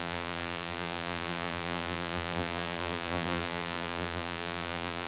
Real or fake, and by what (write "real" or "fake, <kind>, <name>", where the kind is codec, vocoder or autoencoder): fake, vocoder, BigVGAN v2